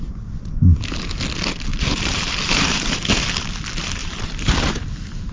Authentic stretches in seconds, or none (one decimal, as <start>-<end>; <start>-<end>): 0.0-1.7; 3.0-4.0